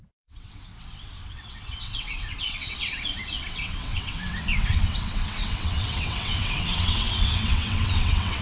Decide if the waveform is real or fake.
fake